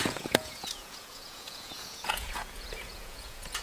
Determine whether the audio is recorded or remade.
remade